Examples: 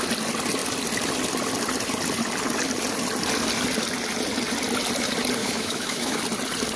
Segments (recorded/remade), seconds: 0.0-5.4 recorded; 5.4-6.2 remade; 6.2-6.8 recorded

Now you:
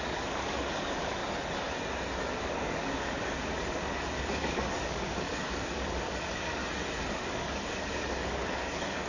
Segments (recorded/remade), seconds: 0.0-1.2 remade; 1.2-2.3 recorded; 2.3-6.6 remade; 6.6-7.1 recorded; 7.1-9.1 remade

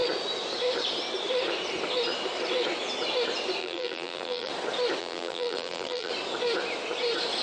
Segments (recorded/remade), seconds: 0.0-3.6 recorded; 3.6-4.5 remade; 4.5-5.0 recorded; 5.0-6.1 remade; 6.1-7.4 recorded